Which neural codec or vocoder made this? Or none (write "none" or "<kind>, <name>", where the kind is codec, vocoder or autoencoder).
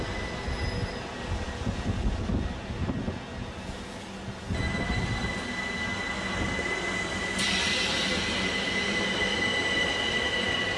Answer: none